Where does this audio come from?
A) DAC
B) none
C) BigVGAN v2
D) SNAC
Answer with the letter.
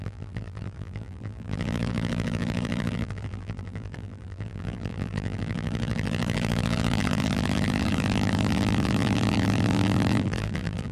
C